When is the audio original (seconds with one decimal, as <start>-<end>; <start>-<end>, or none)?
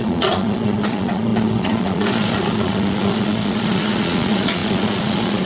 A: none